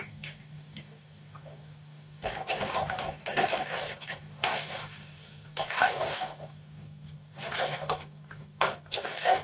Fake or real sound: fake